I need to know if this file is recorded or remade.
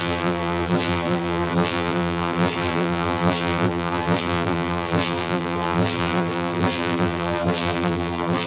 remade